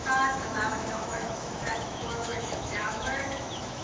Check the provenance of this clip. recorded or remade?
remade